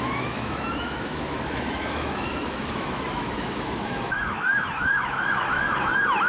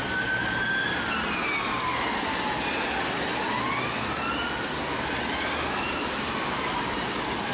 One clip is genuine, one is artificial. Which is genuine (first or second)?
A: second